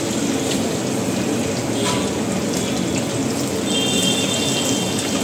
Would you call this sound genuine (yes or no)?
yes